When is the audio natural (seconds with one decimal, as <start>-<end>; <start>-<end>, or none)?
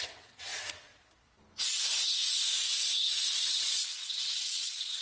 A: 0.5-3.5